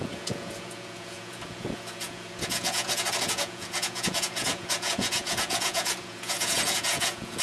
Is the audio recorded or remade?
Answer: remade